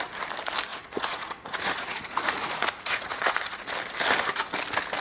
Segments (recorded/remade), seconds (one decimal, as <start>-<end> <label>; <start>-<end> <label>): 0.0-0.7 recorded; 0.7-3.7 remade; 3.7-5.0 recorded